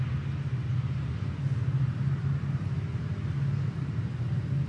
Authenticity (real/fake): real